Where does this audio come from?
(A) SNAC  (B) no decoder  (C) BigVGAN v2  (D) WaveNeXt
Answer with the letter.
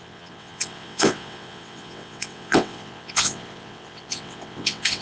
D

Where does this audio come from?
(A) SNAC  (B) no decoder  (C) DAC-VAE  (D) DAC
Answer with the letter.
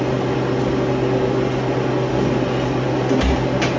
B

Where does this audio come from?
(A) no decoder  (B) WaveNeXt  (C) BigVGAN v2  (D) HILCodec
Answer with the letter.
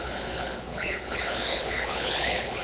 D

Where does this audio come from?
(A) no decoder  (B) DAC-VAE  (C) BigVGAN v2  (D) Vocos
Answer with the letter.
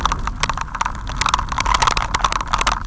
A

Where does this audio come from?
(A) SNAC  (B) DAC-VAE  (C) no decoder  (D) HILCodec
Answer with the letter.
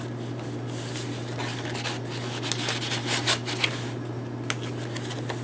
C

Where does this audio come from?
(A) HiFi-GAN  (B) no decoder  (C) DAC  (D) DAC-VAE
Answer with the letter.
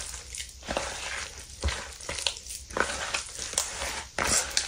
B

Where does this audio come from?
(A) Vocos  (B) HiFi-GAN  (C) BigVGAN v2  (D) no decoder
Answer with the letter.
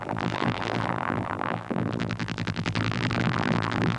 C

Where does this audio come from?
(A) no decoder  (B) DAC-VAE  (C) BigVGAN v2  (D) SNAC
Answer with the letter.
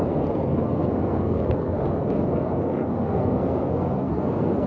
D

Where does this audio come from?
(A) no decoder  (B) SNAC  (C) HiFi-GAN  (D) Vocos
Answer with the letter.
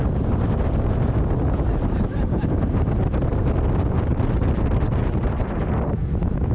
A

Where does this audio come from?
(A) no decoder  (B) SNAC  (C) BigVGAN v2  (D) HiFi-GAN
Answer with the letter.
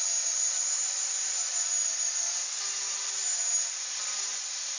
C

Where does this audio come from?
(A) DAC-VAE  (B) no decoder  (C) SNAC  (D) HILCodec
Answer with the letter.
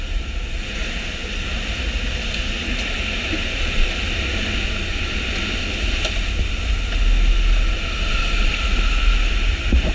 B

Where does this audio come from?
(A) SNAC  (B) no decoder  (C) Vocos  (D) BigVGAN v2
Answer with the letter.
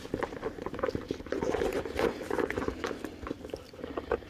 D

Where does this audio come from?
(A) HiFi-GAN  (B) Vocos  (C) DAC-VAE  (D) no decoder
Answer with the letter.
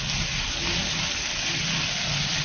D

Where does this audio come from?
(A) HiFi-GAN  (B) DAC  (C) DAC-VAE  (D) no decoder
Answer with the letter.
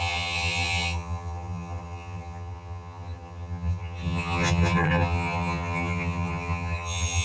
A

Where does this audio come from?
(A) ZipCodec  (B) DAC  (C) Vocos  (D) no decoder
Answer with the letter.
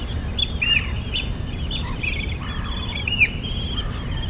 D